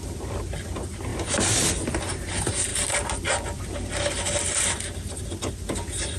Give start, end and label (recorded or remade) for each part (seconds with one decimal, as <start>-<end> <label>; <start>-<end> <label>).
0.0-6.2 recorded